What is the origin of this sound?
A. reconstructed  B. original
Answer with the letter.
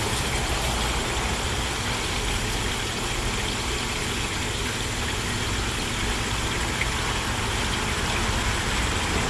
B